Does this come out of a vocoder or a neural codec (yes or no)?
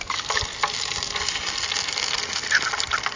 no